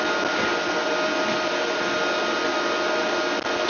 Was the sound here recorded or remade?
recorded